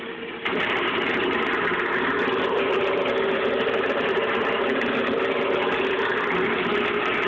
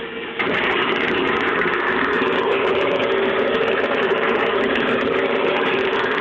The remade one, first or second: second